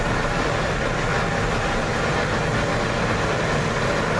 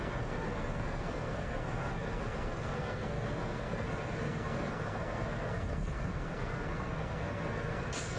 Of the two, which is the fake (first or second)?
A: second